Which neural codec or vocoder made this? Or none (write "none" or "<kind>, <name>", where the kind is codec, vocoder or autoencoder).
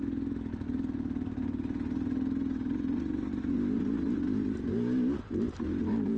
none